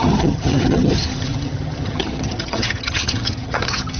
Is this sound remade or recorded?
remade